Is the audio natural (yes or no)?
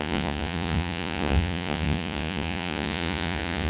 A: no